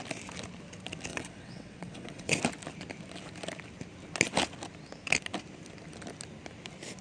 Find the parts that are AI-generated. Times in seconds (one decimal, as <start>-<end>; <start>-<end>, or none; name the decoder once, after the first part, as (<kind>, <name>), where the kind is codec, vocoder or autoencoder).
1.1-2.3 (vocoder, WaveNeXt)